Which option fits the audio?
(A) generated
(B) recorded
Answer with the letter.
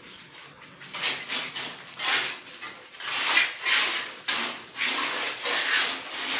B